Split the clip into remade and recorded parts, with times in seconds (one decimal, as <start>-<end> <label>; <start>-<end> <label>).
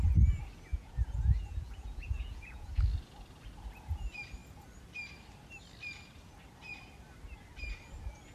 0.0-0.7 recorded; 0.7-2.8 remade; 2.8-8.3 recorded